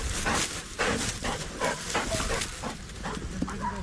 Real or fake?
real